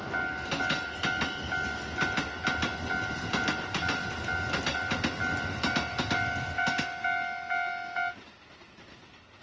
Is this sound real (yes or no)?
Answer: yes